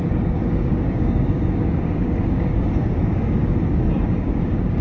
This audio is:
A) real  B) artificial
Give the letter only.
B